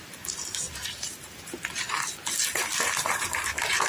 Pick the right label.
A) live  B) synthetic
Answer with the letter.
B